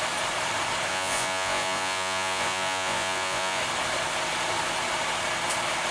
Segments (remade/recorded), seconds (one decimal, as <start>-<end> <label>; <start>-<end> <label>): 0.0-0.9 recorded; 0.9-3.6 remade; 3.6-5.9 recorded